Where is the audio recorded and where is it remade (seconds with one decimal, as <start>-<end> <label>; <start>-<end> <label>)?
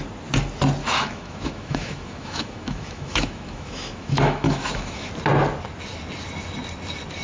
0.0-0.8 recorded; 0.8-5.1 remade; 5.1-7.2 recorded